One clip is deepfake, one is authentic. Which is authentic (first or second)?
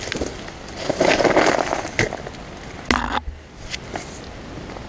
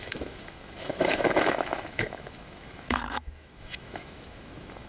first